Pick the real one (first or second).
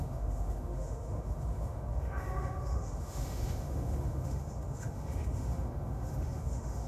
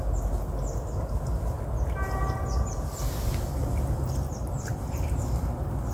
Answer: second